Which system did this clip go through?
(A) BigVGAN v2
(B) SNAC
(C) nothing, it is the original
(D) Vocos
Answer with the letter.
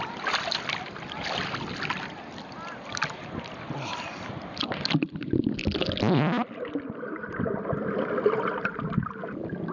C